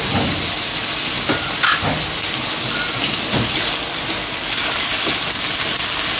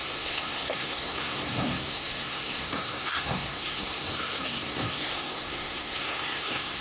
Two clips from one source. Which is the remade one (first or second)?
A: second